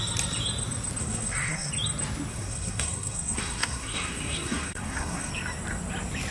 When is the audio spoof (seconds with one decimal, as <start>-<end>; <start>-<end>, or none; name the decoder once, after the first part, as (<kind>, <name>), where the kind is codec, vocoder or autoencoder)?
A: 1.0-1.7 (codec, SNAC); 2.3-5.3

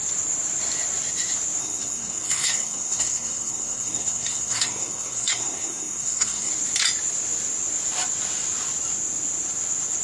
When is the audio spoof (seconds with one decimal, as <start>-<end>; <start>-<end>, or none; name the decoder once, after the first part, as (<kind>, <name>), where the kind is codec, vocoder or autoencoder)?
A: 1.6-6.5 (codec, SNAC)